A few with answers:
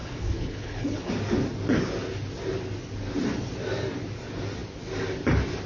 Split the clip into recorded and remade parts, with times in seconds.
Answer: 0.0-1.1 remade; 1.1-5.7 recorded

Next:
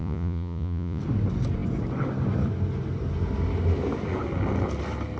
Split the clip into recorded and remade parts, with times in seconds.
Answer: 0.0-1.0 remade; 1.0-5.2 recorded

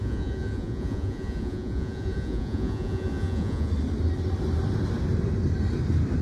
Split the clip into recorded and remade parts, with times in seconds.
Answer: 0.0-3.7 remade; 3.7-6.2 recorded

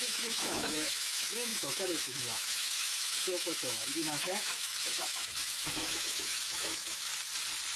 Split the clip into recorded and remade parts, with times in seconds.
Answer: 0.0-7.1 remade; 7.1-7.8 recorded

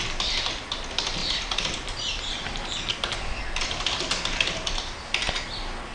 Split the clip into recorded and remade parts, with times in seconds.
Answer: 0.0-1.2 recorded; 1.2-2.5 remade; 2.5-5.9 recorded

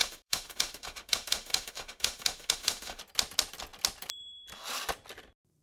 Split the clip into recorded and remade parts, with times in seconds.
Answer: 0.0-3.0 remade; 3.0-5.6 recorded

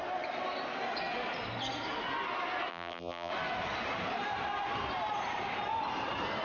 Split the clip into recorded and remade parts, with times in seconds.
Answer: 0.0-2.7 recorded; 2.7-3.3 remade; 3.3-6.4 recorded

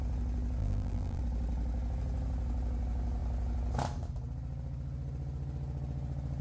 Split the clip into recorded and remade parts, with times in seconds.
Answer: 0.0-0.6 recorded; 0.6-1.2 remade; 1.2-6.4 recorded